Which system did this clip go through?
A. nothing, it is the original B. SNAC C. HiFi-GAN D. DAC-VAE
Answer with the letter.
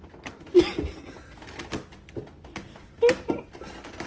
A